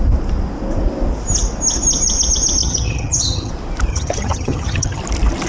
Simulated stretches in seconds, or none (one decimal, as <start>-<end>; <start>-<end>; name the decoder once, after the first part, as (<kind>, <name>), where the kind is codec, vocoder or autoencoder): 2.6-3.5 (vocoder, HiFi-GAN); 3.9-5.0